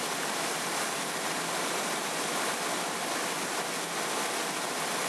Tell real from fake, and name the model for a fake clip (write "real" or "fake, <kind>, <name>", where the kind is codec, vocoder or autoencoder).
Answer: real